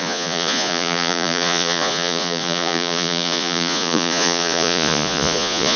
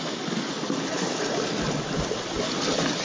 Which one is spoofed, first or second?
first